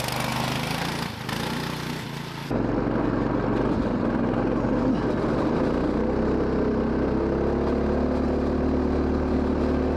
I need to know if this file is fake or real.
real